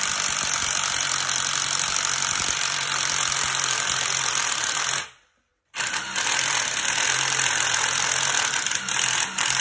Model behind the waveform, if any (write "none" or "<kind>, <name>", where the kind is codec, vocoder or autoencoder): vocoder, BigVGAN v2